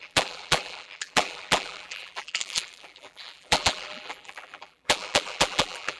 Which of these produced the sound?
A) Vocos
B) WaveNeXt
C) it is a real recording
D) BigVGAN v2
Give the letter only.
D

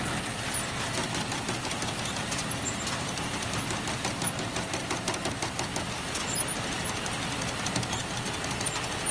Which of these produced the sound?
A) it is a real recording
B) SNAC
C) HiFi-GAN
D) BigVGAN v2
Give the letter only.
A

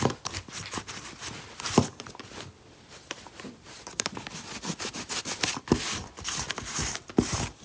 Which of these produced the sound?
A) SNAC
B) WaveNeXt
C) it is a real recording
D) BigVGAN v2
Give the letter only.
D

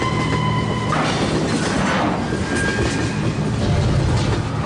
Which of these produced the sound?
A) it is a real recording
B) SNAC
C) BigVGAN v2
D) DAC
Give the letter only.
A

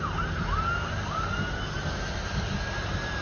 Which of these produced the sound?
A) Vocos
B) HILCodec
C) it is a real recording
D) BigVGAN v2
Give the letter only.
C